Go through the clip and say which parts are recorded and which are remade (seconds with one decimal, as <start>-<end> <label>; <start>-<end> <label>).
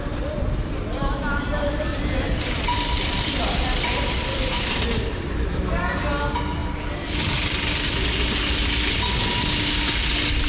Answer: 0.0-1.9 recorded; 1.9-6.0 remade; 6.0-6.6 recorded; 6.6-10.1 remade; 10.1-10.5 recorded